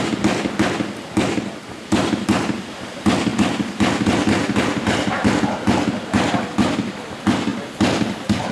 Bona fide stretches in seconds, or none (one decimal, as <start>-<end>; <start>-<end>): 0.0-8.5